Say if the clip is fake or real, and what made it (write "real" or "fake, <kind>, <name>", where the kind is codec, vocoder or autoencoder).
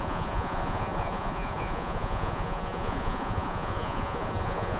fake, vocoder, Vocos